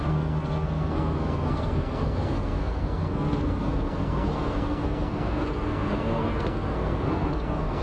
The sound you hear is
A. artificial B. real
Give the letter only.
A